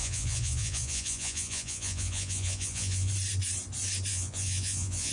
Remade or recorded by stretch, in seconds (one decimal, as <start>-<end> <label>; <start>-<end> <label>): 0.0-3.1 remade; 3.1-4.1 recorded; 4.1-5.1 remade